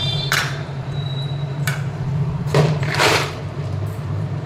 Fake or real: fake